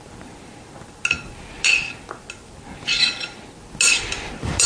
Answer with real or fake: real